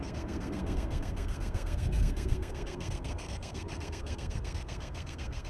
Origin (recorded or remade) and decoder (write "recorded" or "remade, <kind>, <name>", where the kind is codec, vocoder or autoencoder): remade, codec, SNAC